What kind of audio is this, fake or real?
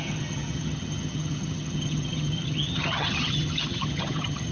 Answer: fake